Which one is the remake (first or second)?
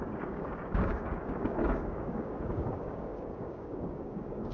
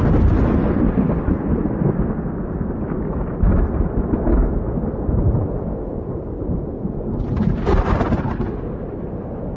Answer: first